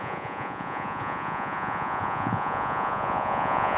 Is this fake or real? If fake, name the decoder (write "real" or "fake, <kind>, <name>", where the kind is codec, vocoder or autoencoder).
fake, vocoder, Vocos